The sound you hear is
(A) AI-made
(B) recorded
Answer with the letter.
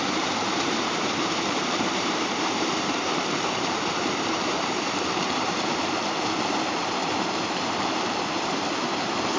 A